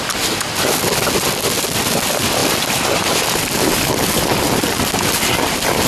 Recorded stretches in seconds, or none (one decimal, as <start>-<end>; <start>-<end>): 0.0-5.9